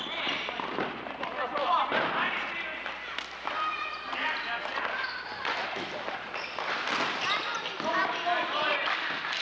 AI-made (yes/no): no